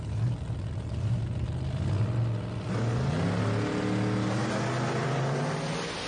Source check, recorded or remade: recorded